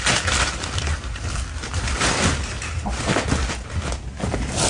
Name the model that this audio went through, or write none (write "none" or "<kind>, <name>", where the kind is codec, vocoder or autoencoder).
none